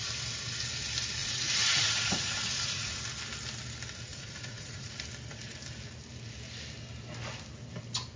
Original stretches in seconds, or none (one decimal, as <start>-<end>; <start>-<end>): 0.0-1.2; 3.0-4.1; 4.9-8.2

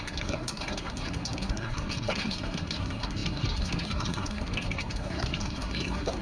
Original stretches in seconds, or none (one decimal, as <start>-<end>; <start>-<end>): none

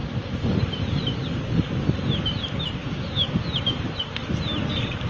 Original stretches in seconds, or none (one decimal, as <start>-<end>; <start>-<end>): 0.0-5.1

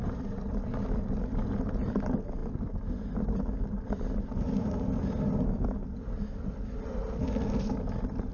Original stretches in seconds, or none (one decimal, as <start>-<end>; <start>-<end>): 0.0-8.3

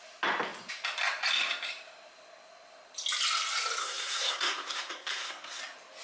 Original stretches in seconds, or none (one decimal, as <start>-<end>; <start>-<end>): 0.0-3.8; 5.6-6.0

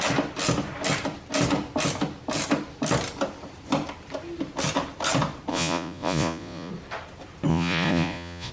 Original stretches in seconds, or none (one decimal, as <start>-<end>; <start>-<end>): 0.0-5.5; 6.7-7.5